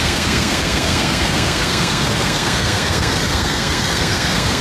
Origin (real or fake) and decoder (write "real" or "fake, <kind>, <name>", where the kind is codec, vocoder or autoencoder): fake, codec, SNAC